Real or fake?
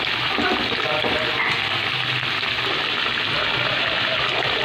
real